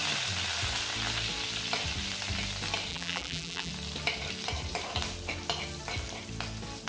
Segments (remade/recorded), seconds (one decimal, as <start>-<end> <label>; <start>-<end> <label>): 0.0-2.9 recorded; 2.9-3.7 remade; 3.7-6.9 recorded